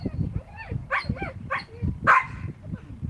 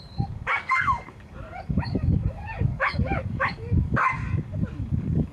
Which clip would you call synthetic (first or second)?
second